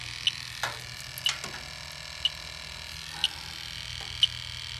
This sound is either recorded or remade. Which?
recorded